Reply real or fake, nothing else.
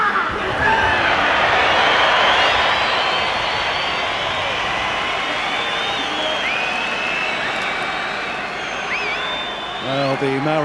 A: real